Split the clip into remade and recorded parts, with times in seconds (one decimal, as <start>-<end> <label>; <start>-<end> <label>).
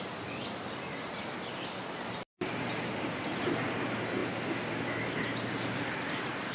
0.0-6.5 recorded